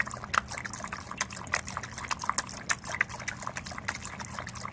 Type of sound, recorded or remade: recorded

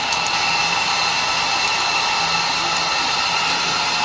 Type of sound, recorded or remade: recorded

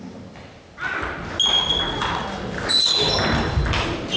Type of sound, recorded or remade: recorded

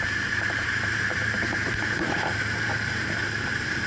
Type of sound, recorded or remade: remade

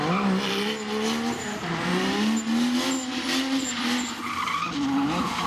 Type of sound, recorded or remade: recorded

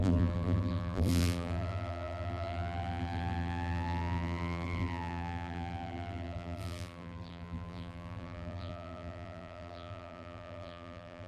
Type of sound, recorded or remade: remade